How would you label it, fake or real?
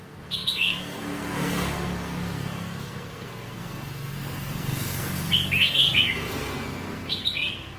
fake